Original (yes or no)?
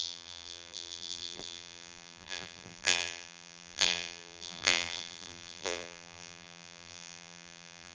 no